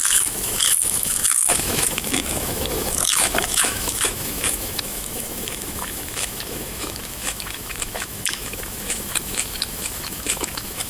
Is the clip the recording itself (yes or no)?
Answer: no